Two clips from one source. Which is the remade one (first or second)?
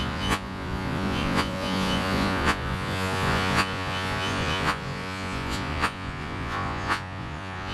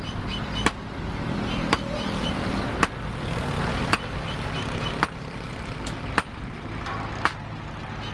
first